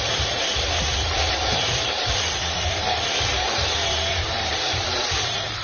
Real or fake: fake